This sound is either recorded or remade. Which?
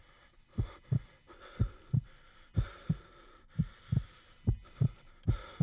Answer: recorded